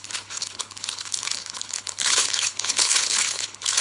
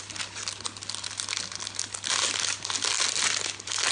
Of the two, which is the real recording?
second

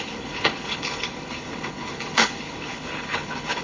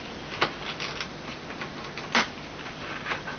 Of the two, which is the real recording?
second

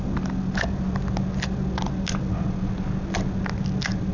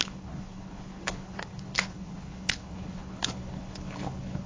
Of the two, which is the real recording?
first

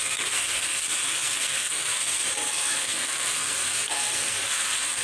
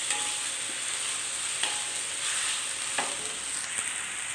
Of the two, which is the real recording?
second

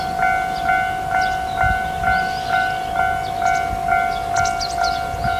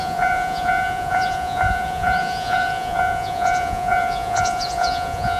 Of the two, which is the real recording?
first